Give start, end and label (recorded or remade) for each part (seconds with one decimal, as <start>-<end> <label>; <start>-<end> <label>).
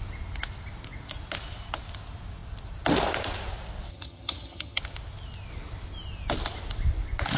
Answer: 0.0-3.9 recorded; 3.9-4.8 remade; 4.8-7.4 recorded